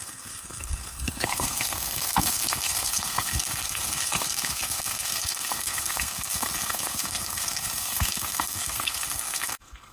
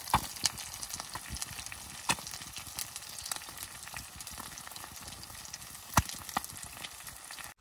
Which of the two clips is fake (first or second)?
first